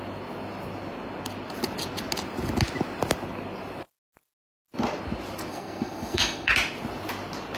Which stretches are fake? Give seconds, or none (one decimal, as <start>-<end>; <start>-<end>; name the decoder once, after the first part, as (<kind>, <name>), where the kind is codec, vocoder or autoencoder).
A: 5.5-6.5 (codec, SNAC)